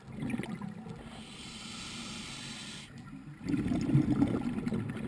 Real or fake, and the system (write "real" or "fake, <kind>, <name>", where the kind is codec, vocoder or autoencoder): real